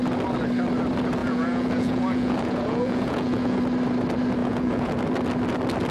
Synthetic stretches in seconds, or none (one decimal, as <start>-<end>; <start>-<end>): 1.2-3.6; 4.4-5.0